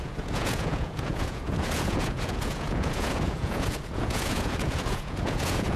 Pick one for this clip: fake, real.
fake